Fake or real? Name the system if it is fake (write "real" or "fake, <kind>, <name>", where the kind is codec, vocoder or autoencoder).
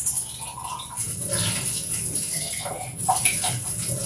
real